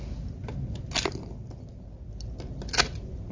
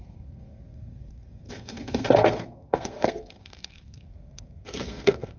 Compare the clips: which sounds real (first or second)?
first